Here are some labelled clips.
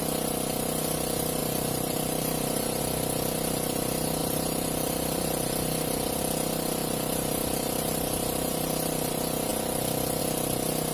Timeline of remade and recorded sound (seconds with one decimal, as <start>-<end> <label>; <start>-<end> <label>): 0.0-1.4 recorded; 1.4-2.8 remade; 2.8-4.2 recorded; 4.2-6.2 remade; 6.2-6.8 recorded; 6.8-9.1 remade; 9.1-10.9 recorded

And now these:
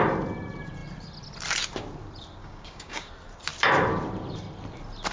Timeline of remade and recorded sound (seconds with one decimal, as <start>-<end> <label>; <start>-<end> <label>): 0.0-2.4 recorded; 2.4-3.1 remade; 3.1-5.1 recorded

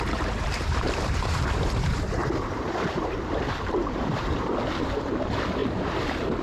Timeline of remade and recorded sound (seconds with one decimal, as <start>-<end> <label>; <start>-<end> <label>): 0.0-6.4 remade

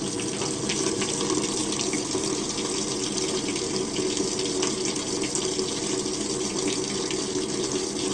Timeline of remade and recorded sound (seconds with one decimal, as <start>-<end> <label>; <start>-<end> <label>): 0.0-8.1 recorded

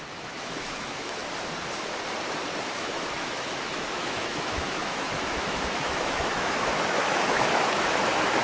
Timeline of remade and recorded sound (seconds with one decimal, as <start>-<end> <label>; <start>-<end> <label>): 0.0-1.2 remade; 1.2-2.7 recorded; 2.7-8.4 remade

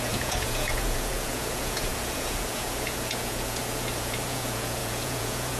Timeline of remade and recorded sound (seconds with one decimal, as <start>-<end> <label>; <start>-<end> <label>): 0.0-5.6 remade

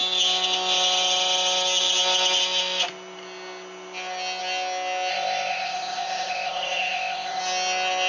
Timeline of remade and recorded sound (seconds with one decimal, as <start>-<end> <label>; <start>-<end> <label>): 0.0-5.1 recorded; 5.1-7.4 remade; 7.4-8.1 recorded